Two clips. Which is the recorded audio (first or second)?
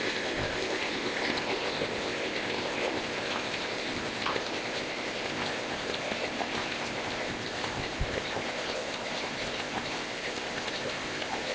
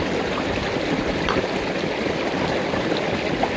second